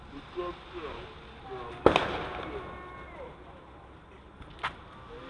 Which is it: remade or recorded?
recorded